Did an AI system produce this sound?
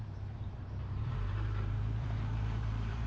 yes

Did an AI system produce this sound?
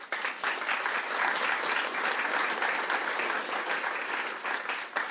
no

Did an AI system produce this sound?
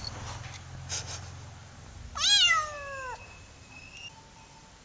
no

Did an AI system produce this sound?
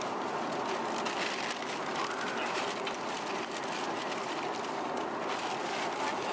no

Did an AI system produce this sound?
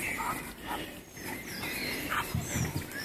no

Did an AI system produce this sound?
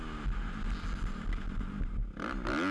no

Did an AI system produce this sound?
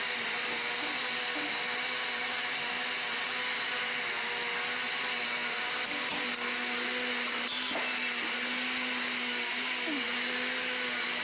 no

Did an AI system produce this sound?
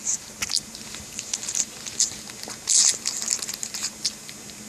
no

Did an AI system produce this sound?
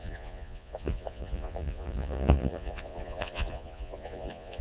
yes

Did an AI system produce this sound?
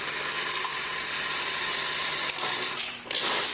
no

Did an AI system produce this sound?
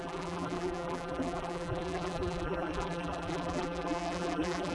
yes